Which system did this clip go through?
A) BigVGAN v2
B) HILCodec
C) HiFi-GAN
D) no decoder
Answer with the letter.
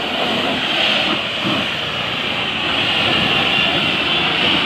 D